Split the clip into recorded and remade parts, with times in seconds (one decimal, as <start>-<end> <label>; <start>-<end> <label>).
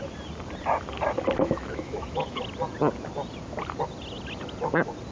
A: 0.0-1.4 recorded; 1.4-2.4 remade; 2.4-5.1 recorded